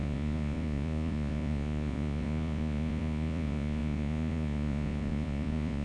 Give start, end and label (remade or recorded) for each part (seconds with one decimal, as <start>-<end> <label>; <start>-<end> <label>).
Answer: 0.0-5.8 remade

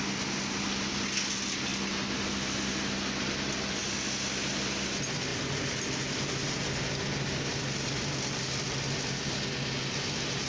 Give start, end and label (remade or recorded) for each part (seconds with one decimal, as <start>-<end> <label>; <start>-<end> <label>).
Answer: 0.0-10.5 recorded